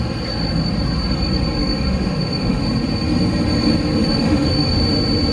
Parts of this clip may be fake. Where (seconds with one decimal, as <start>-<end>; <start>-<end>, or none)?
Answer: 1.6-2.6; 3.9-4.8